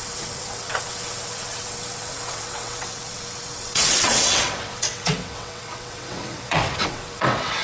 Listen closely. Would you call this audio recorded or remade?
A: remade